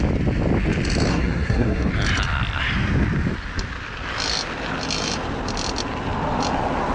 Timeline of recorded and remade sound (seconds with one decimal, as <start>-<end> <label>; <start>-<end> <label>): 0.0-1.1 recorded; 1.1-1.9 remade; 1.9-6.9 recorded